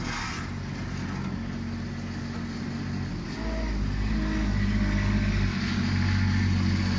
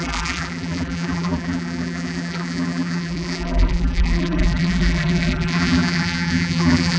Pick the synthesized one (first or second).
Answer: second